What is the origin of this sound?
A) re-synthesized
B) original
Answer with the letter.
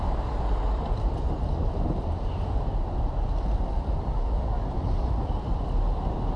A